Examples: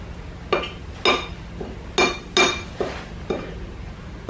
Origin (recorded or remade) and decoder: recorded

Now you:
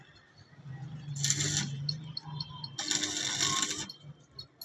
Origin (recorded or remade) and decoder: recorded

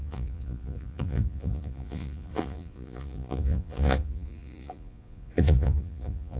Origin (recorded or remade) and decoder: remade, vocoder, Vocos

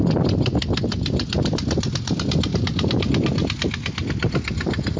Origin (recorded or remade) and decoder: recorded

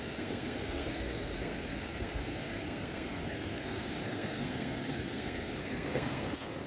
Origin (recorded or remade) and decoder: remade, codec, SNAC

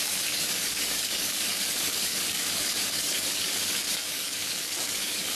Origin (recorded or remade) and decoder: remade, codec, DAC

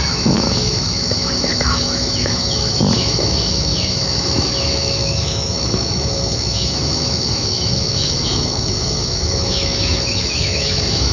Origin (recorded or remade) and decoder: remade, autoencoder, DAC-VAE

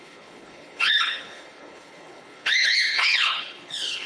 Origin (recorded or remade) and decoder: remade, codec, HILCodec